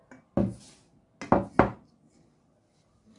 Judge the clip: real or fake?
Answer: real